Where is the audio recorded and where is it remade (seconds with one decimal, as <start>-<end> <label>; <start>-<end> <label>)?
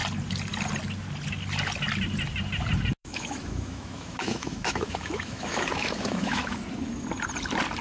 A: 0.0-3.0 recorded; 3.0-6.6 remade; 6.6-7.8 recorded